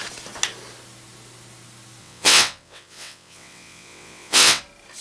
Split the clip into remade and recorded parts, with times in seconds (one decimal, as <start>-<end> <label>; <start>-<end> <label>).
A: 0.0-2.0 recorded; 2.0-4.6 remade; 4.6-5.0 recorded